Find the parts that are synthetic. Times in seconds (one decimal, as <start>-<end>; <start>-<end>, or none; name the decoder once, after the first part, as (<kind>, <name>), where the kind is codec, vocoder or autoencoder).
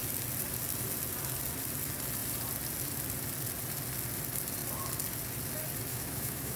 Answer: 5.9-6.6 (autoencoder, DAC-VAE)